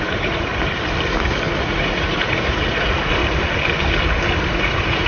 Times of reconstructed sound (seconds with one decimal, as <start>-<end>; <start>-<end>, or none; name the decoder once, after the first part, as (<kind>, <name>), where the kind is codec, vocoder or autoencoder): 0.0-0.5 (vocoder, Vocos); 1.6-3.2; 4.5-5.1